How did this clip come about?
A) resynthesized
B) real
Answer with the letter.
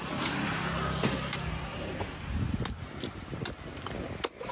B